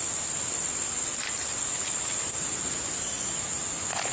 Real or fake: real